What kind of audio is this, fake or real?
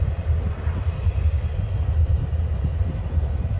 fake